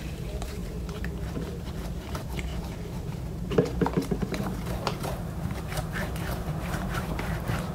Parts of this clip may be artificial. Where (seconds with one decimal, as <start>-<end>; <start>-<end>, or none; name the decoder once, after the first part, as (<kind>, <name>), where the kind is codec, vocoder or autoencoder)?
0.0-7.7 (vocoder, BigVGAN v2)